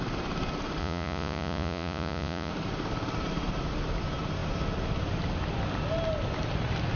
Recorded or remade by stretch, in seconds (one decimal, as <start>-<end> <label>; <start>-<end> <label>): 0.0-0.8 recorded; 0.8-2.5 remade; 2.5-7.0 recorded